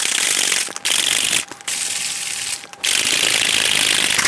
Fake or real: real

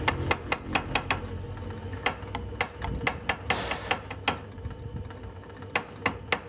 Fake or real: real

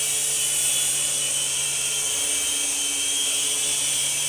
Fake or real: real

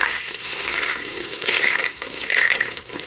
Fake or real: fake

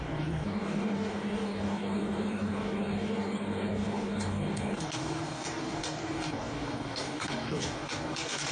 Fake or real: fake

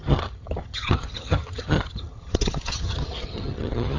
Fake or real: fake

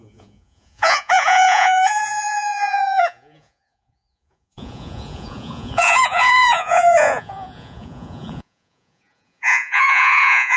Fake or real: fake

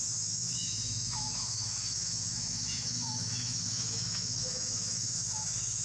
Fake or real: fake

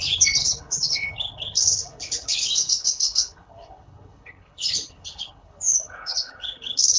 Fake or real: fake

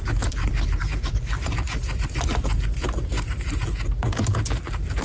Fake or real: fake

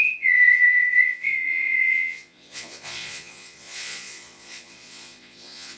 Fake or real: fake